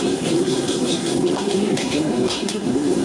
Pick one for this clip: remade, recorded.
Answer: remade